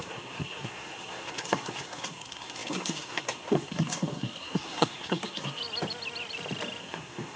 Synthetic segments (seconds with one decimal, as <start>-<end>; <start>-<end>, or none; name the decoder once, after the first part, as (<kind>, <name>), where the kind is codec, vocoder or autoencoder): 0.0-5.6 (codec, SNAC); 6.8-7.4